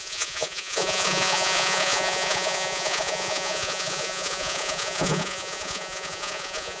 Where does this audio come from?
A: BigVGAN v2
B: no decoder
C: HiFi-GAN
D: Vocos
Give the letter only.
D